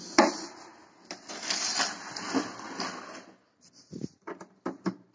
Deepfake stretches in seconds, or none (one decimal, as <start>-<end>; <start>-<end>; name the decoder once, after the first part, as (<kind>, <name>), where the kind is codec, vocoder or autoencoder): 0.0-0.7 (vocoder, BigVGAN v2); 3.8-5.1